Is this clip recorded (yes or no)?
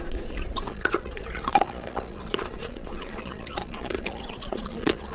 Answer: no